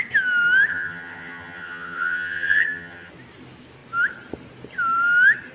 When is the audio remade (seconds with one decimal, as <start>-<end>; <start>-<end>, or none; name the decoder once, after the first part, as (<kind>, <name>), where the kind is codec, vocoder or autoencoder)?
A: 0.7-3.1 (vocoder, HiFi-GAN)